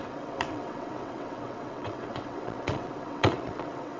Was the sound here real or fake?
fake